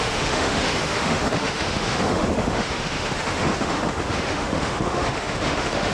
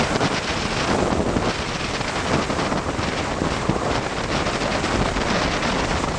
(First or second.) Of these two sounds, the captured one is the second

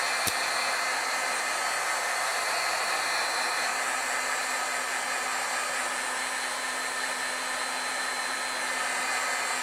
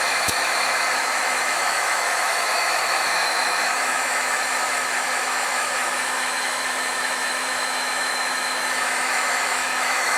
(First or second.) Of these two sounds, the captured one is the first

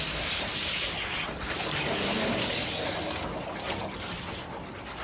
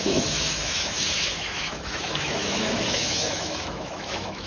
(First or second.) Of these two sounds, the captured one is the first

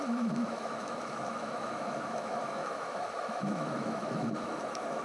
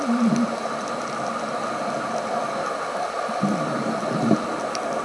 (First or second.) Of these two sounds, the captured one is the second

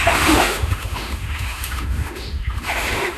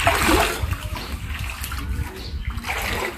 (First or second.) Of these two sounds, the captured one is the second